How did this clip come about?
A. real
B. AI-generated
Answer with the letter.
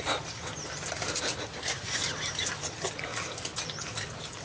A